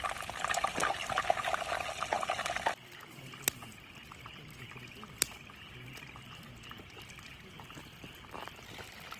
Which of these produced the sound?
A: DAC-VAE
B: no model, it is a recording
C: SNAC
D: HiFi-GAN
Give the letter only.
B